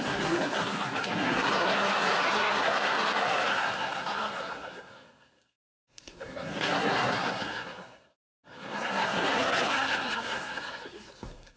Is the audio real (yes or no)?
no